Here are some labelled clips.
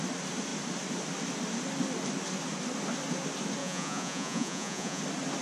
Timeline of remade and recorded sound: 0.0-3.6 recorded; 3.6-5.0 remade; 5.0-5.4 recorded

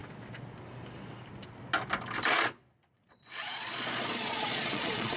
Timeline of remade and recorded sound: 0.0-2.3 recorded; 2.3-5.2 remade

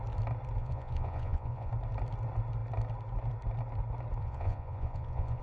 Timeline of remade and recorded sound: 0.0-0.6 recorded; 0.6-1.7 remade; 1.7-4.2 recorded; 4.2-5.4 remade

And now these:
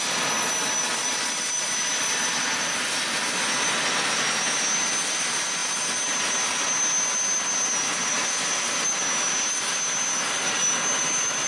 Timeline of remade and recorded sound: 0.0-11.5 recorded

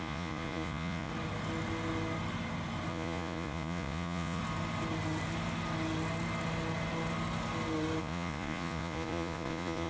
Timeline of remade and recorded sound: 0.0-1.1 remade; 1.1-2.9 recorded; 2.9-4.4 remade; 4.4-8.0 recorded; 8.0-9.9 remade

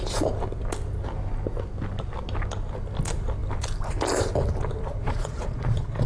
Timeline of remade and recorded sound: 0.0-4.9 recorded; 4.9-6.1 remade